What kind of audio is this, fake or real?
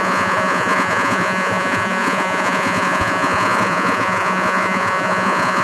fake